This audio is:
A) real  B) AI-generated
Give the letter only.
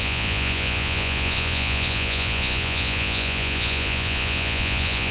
B